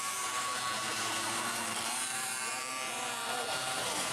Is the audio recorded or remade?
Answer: remade